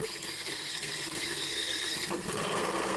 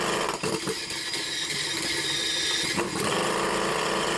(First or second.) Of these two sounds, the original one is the second